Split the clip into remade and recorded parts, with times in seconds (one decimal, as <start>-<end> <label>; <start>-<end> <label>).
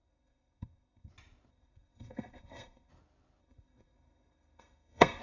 0.0-1.1 remade; 1.1-1.5 recorded; 1.5-2.9 remade; 2.9-3.4 recorded; 3.4-5.2 remade